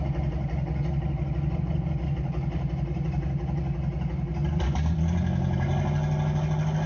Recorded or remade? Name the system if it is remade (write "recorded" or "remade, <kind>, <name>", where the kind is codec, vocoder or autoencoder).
recorded